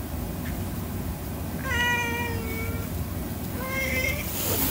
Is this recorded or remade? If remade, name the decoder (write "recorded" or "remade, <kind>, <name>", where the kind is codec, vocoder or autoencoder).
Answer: recorded